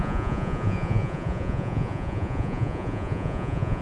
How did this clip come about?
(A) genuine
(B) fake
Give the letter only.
B